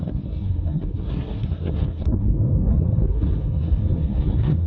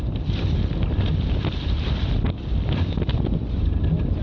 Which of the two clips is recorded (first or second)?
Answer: second